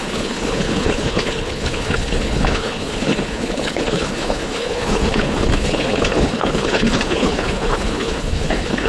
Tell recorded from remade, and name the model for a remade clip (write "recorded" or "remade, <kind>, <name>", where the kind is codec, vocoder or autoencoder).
remade, codec, HILCodec